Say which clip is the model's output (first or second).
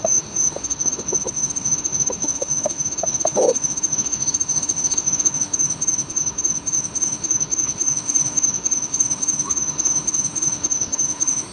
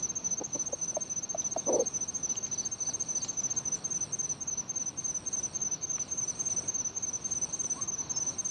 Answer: first